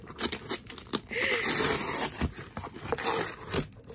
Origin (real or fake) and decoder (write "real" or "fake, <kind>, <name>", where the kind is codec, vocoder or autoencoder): real